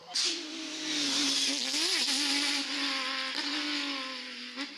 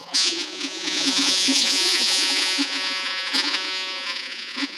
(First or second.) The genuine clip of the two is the first